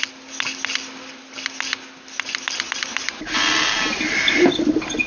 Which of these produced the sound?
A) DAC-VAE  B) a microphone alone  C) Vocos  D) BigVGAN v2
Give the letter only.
B